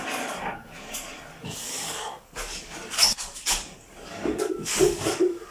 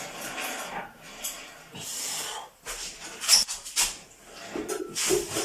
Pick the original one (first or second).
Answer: second